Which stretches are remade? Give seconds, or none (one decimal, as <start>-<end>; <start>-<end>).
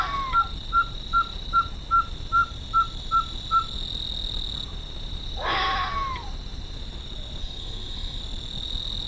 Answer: 7.4-8.2